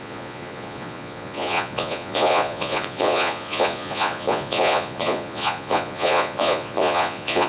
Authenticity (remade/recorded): remade